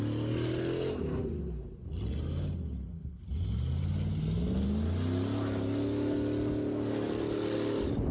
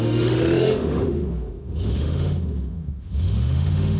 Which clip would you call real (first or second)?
first